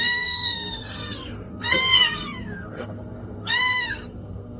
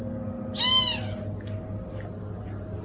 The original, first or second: second